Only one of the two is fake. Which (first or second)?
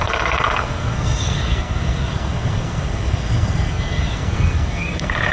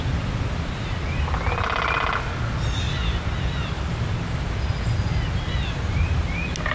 first